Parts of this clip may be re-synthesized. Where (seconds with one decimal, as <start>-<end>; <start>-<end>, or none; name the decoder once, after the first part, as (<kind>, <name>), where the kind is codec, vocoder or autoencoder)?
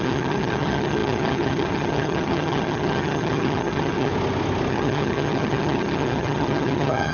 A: 0.0-4.1 (vocoder, HiFi-GAN); 4.7-7.1